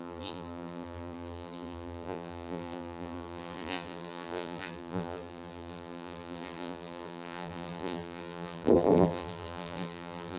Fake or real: fake